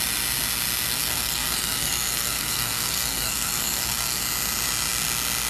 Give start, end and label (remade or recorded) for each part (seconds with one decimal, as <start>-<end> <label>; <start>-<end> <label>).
0.0-0.9 recorded; 0.9-4.2 remade; 4.2-5.5 recorded